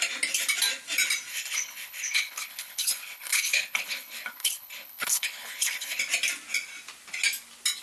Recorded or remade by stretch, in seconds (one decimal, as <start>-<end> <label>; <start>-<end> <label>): 0.0-1.3 recorded; 1.3-6.0 remade; 6.0-7.8 recorded